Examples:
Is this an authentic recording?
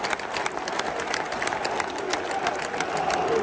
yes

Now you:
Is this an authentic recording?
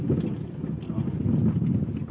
yes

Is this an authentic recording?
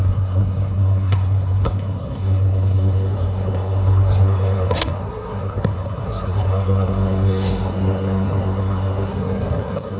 no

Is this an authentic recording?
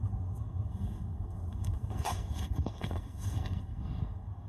no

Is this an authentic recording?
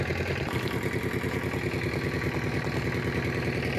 yes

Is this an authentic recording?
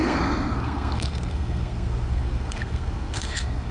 no